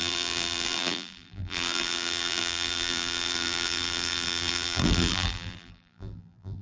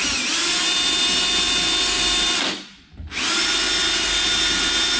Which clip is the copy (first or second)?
first